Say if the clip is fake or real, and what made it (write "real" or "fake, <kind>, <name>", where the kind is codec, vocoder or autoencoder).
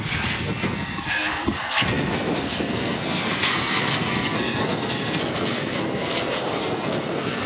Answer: fake, codec, SNAC